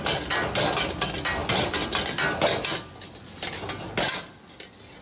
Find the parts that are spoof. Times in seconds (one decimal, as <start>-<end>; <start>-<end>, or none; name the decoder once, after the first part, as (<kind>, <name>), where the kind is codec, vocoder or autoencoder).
none

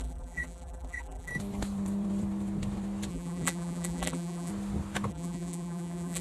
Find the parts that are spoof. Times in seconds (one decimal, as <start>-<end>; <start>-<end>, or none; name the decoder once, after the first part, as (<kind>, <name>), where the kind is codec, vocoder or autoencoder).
0.0-1.3 (vocoder, BigVGAN v2); 3.1-4.5; 5.1-6.2

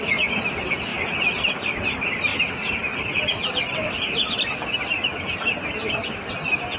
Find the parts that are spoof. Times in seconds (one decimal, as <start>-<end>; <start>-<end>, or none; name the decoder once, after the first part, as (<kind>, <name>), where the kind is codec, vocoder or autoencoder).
0.9-1.5 (vocoder, BigVGAN v2); 2.3-6.3

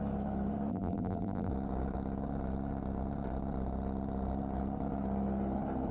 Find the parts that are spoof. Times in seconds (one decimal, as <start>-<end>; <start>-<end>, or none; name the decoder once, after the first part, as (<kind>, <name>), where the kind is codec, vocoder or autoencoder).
0.7-1.5 (vocoder, BigVGAN v2)

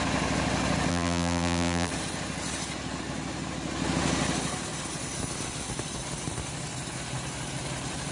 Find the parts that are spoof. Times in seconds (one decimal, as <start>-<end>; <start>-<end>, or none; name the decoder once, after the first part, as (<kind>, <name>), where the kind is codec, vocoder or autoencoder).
0.9-1.9 (vocoder, BigVGAN v2)

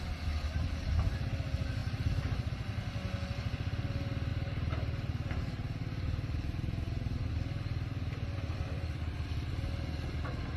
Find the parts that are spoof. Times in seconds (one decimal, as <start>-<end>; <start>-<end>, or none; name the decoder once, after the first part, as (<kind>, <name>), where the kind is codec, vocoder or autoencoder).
1.8-2.5 (vocoder, BigVGAN v2); 4.3-7.3

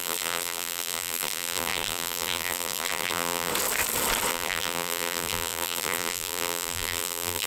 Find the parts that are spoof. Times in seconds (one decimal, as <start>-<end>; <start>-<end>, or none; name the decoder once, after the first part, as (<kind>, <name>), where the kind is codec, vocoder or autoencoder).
0.0-3.5 (vocoder, BigVGAN v2); 4.3-7.5

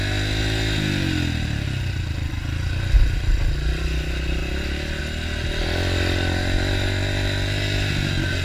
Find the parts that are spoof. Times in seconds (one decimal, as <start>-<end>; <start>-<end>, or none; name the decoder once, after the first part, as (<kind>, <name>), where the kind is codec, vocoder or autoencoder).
none